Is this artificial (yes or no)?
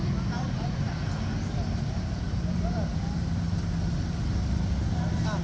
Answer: no